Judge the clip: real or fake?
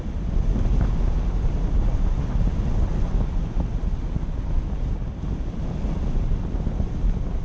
real